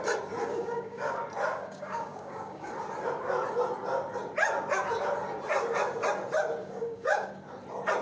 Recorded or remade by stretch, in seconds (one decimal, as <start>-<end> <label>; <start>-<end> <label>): 0.0-0.4 recorded; 0.4-1.1 remade; 1.1-1.6 recorded; 1.6-2.7 remade; 2.7-6.6 recorded; 6.6-7.3 remade; 7.3-8.0 recorded